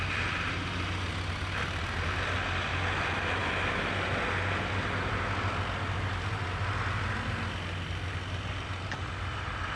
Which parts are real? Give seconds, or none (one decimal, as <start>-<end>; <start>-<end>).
0.0-9.8